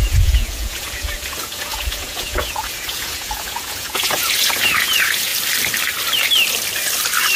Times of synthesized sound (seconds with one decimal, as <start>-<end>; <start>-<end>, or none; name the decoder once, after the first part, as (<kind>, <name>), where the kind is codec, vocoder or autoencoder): 0.0-5.3 (vocoder, Vocos)